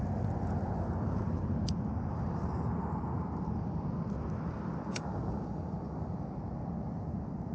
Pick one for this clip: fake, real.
real